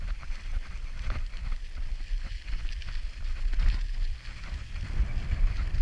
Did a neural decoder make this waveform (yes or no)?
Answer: no